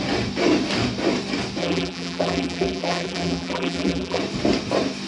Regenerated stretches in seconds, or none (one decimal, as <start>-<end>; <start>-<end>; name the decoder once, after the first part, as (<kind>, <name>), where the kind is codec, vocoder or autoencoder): 1.6-4.2 (vocoder, BigVGAN v2)